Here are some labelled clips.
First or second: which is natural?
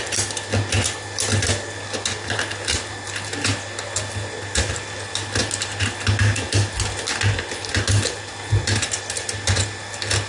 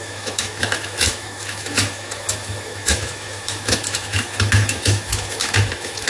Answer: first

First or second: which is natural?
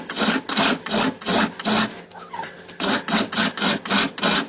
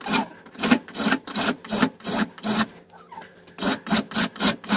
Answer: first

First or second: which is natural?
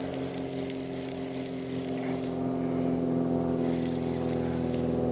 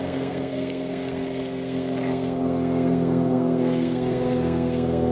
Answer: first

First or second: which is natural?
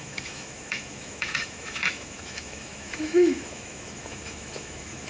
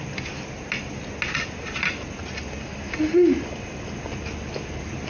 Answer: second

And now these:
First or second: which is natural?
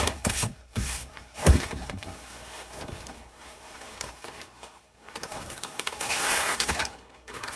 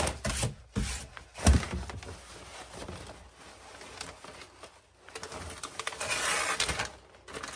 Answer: second